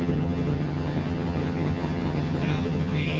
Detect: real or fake fake